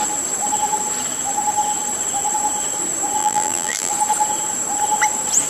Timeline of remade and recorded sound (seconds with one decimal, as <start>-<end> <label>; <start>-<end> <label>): 0.0-3.2 recorded; 3.2-3.9 remade; 3.9-5.5 recorded